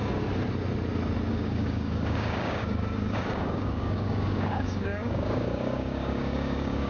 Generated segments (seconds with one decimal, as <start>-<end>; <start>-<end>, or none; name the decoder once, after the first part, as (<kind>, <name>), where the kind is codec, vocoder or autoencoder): 1.3-6.9 (codec, DAC)